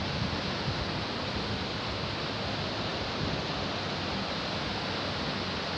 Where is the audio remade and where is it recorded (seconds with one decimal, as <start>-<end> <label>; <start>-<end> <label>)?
0.0-5.8 recorded